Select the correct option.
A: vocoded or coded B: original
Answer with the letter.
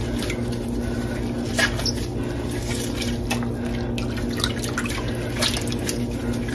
B